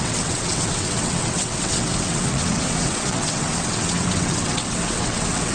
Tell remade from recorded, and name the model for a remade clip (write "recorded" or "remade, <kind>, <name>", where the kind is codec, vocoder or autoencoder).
remade, vocoder, WaveNeXt